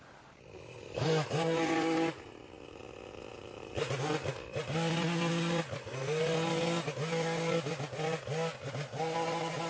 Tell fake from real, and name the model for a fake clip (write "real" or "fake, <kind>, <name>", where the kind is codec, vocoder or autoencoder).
real